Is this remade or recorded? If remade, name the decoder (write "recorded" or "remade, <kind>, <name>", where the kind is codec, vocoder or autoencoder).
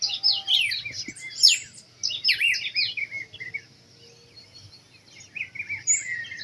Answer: recorded